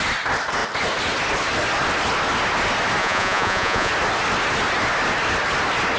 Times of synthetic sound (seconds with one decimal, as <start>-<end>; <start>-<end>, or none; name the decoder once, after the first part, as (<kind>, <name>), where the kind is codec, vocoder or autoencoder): 3.0-3.9 (vocoder, Vocos)